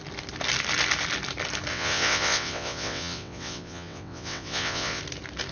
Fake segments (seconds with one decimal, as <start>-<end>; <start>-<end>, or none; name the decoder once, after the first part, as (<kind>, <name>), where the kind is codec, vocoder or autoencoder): 1.7-5.0 (vocoder, WaveNeXt)